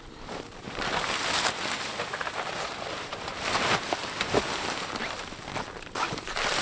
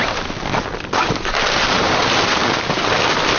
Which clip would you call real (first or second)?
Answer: second